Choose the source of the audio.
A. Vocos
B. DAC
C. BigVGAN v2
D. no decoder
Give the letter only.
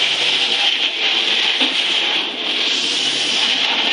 C